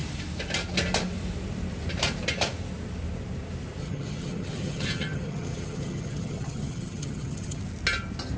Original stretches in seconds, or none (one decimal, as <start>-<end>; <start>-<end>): 0.0-3.8; 7.6-8.4